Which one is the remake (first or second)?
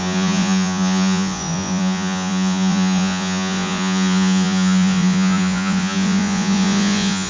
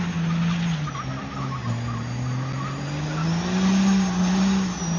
first